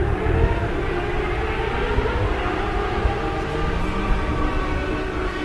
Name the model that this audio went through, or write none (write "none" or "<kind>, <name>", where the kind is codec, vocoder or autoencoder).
none